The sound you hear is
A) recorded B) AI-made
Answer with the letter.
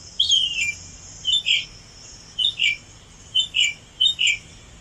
A